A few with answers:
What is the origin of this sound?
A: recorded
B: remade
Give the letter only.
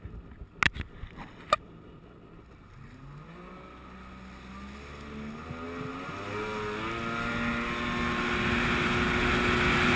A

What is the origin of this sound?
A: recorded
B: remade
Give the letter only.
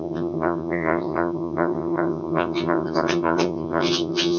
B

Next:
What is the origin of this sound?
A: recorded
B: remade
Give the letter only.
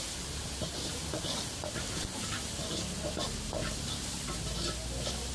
A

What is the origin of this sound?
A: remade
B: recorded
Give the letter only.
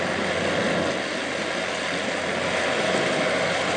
B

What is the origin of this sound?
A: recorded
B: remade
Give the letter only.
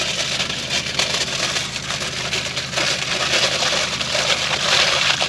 A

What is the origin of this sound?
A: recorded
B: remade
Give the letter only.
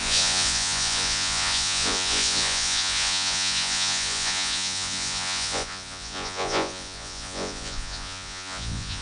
B